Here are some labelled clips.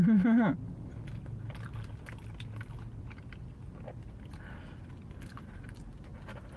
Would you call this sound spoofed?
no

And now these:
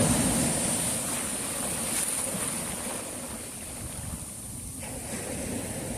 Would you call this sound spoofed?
no